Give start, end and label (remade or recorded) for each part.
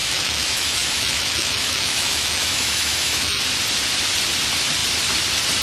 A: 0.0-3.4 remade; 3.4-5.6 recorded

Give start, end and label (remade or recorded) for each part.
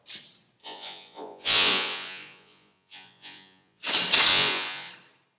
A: 0.0-0.6 recorded; 0.6-3.8 remade; 3.8-4.3 recorded; 4.3-4.9 remade; 4.9-5.4 recorded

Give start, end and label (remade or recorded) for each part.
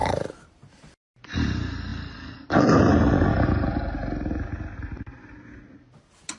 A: 0.0-0.9 remade; 0.9-6.4 recorded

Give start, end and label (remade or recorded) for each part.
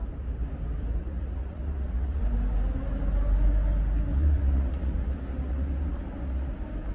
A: 0.0-1.0 recorded; 1.0-2.2 remade; 2.2-4.1 recorded; 4.1-6.5 remade; 6.5-6.9 recorded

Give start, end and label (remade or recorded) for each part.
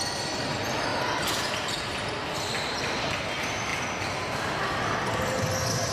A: 0.0-5.9 recorded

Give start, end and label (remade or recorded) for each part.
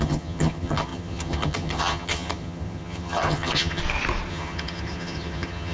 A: 0.0-3.8 remade; 3.8-4.3 recorded; 4.3-5.7 remade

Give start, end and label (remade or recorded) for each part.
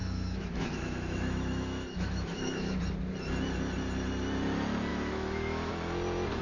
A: 0.0-2.8 remade; 2.8-4.9 recorded; 4.9-5.7 remade; 5.7-6.4 recorded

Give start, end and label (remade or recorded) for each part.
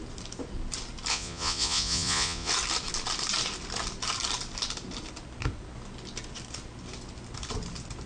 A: 0.0-1.1 recorded; 1.1-2.5 remade; 2.5-8.1 recorded